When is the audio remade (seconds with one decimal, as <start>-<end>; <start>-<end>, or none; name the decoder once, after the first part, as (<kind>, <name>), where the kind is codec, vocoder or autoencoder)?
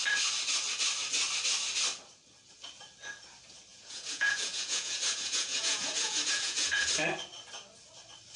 3.7-6.9 (vocoder, Vocos)